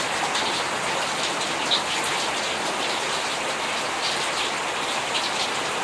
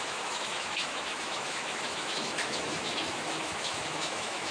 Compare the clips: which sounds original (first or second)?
first